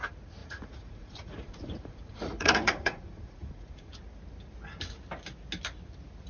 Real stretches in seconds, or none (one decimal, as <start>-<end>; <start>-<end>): 0.0-0.4; 3.9-6.3